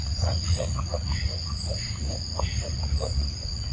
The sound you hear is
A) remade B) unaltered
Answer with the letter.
A